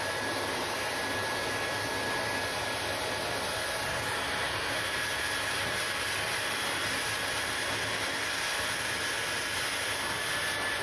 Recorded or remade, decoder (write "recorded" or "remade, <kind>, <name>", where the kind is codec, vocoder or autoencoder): recorded